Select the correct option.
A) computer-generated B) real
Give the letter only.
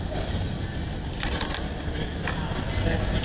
B